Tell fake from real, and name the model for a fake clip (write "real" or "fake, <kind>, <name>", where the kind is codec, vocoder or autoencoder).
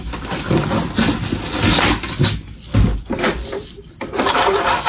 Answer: real